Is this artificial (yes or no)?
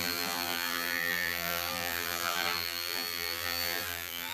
yes